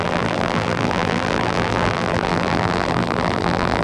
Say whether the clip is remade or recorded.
remade